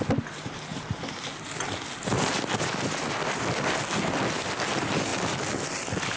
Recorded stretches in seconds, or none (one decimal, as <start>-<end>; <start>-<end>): 0.0-6.2

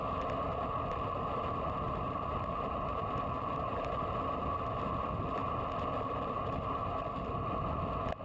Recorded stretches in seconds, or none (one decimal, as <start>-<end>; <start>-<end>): 0.0-0.5; 4.4-5.4; 6.5-8.2

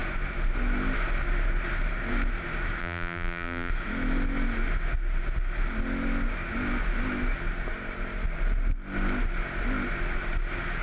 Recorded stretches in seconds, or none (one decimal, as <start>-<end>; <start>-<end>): 0.0-2.8; 3.7-10.8

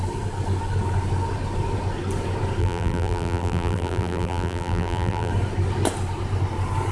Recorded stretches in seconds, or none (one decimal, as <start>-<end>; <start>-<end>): 0.0-2.6; 5.3-6.9

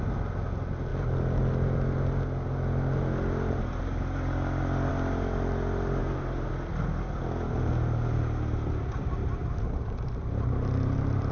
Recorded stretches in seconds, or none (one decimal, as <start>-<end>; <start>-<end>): 0.0-6.0; 6.5-9.2